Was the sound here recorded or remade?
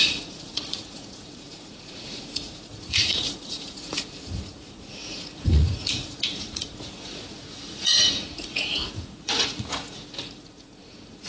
remade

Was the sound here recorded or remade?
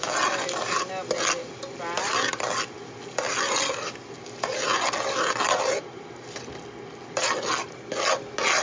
recorded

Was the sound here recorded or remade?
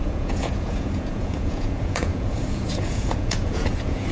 remade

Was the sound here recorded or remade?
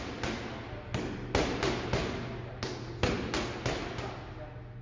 recorded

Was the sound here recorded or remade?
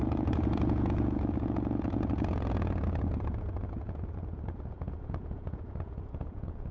remade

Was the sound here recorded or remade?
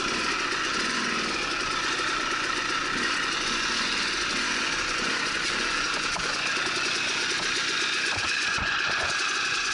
remade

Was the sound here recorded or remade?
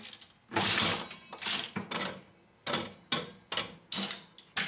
recorded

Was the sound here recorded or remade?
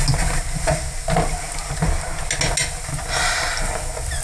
recorded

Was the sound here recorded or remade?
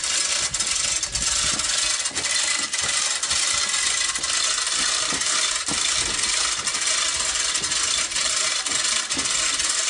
recorded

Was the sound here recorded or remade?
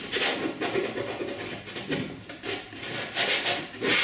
recorded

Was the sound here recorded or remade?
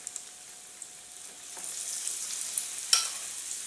recorded